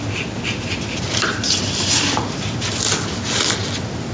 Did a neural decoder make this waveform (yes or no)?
no